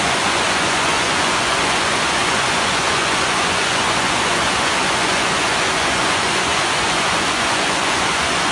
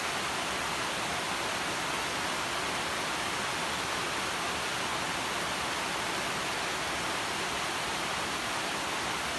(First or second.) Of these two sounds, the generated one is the first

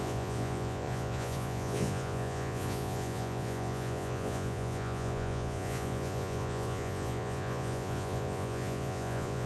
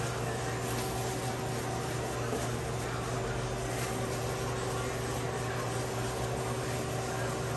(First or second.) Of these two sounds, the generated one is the first